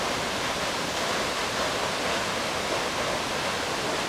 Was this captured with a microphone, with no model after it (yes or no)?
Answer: yes